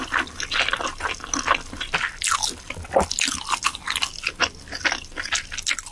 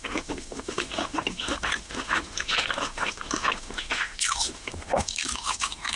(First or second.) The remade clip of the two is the second